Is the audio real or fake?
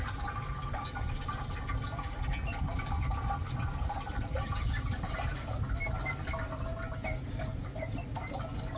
real